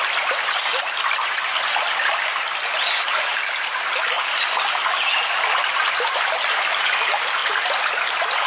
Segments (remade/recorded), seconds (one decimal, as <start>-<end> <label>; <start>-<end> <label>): 0.0-8.5 recorded